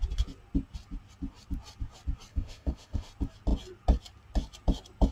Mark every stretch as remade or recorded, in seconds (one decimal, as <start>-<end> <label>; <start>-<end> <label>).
0.0-2.3 recorded; 2.3-3.1 remade; 3.1-5.1 recorded